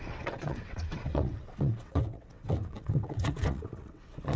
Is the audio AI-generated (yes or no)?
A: yes